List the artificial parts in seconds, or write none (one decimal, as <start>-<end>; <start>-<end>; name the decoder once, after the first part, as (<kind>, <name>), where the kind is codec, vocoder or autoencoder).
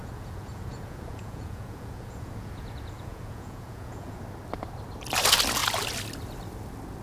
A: 0.0-4.2 (vocoder, Vocos)